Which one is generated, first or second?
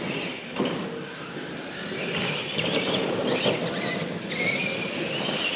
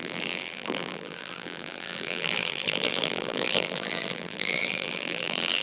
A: second